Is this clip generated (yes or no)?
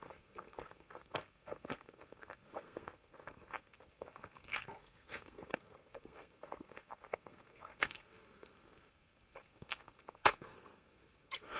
yes